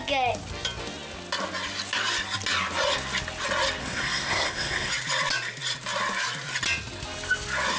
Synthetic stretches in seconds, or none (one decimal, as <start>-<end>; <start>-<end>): 3.8-4.9